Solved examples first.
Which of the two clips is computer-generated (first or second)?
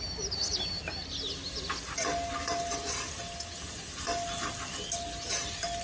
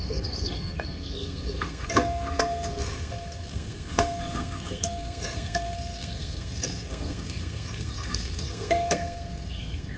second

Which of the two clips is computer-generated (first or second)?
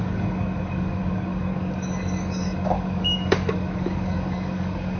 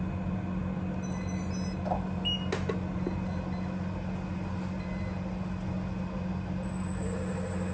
first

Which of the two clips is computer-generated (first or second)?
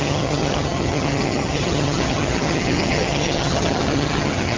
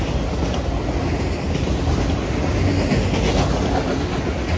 first